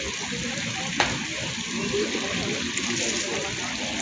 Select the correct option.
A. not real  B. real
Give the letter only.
B